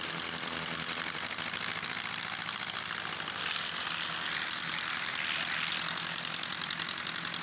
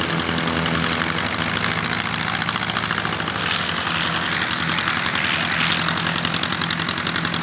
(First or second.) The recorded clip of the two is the second